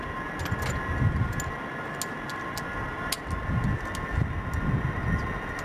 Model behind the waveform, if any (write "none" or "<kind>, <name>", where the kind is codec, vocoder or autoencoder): none